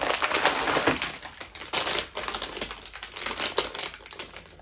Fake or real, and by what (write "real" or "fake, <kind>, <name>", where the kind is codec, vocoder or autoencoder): real